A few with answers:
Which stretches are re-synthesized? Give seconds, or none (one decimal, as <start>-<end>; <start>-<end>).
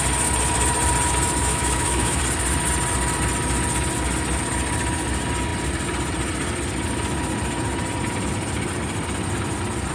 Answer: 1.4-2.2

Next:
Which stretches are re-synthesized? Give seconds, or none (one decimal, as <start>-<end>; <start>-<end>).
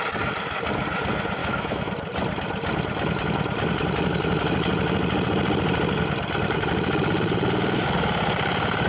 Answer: 1.4-1.9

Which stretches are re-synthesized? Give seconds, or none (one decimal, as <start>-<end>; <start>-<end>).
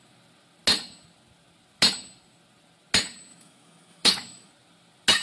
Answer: 3.3-4.5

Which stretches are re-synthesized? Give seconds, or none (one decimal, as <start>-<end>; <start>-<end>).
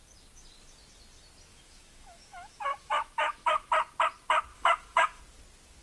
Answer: 1.5-3.7; 4.5-5.2